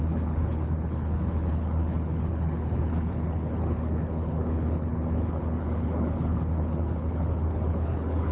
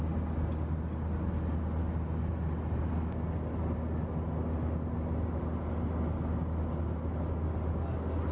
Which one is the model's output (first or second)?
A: first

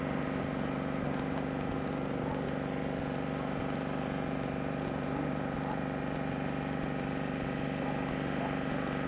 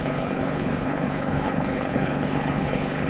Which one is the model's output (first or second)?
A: second